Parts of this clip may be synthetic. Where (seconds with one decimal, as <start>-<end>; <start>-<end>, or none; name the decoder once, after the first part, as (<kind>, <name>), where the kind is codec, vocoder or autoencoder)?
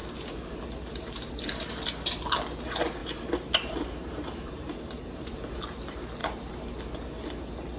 3.0-5.6 (vocoder, BigVGAN v2); 6.2-6.8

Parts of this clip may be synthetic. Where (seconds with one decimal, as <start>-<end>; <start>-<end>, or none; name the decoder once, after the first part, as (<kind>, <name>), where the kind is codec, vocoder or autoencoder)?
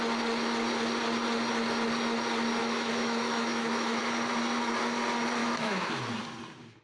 2.6-4.0 (autoencoder, DAC-VAE); 5.4-5.9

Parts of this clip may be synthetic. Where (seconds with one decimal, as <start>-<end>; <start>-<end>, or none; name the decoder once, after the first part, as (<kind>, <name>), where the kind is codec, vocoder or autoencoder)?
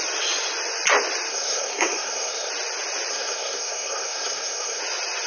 1.3-2.5 (codec, SNAC); 3.1-4.8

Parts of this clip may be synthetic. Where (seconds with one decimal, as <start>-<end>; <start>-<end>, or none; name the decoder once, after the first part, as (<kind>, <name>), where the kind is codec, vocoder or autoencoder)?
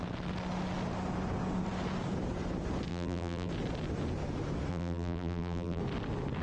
2.9-3.5 (vocoder, BigVGAN v2); 4.7-5.8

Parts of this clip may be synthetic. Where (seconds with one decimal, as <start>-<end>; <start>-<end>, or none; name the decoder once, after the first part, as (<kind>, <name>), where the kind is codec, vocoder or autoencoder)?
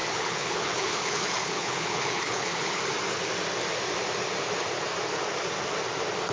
0.0-2.8 (codec, HILCodec)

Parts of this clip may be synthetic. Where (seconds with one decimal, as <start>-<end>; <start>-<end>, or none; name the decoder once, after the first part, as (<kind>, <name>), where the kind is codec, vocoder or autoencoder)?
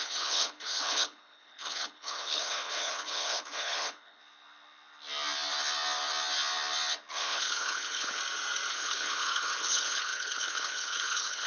0.0-4.2 (codec, HILCodec); 7.1-8.2; 8.7-11.5